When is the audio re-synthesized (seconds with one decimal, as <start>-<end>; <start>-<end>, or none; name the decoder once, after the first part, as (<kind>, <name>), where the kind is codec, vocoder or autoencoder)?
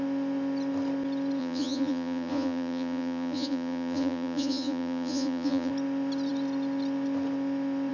1.4-5.7 (vocoder, Vocos)